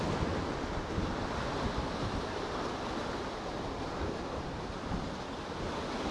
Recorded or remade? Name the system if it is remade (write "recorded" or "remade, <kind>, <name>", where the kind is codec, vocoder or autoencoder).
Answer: recorded